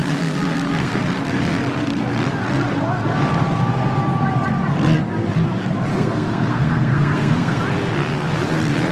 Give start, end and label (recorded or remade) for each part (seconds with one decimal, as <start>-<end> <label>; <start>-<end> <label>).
0.0-1.0 remade; 1.0-5.9 recorded; 5.9-7.6 remade; 7.6-8.9 recorded